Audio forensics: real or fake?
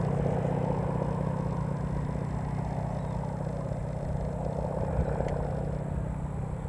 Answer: real